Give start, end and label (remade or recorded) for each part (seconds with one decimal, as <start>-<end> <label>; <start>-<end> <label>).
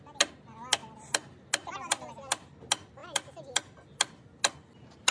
0.0-5.1 recorded